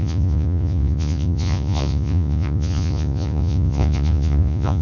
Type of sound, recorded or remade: remade